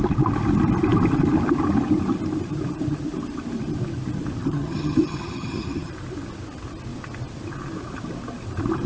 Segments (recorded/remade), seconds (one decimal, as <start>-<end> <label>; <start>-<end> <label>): 0.0-4.4 recorded; 4.4-5.9 remade; 5.9-8.9 recorded